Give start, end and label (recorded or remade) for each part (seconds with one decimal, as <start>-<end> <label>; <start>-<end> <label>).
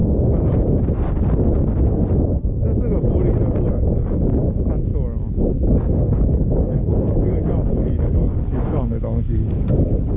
0.0-3.7 recorded; 3.7-4.9 remade; 4.9-5.5 recorded; 5.5-10.2 remade